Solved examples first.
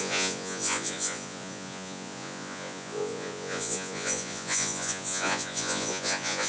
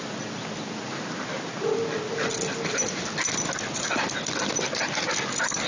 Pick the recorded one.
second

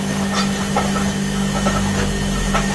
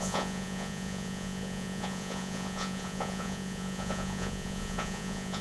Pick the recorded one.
first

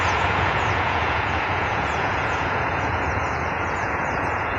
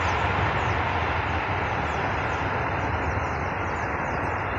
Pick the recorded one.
second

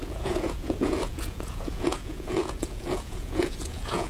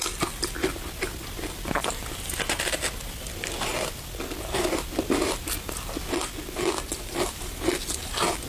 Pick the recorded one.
second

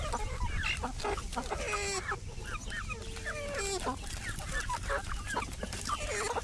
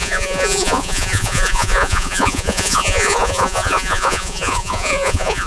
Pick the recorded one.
first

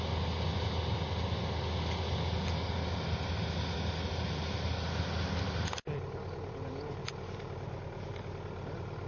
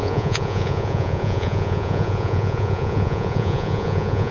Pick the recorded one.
first